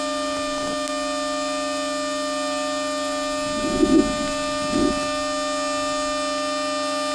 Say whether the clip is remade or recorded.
recorded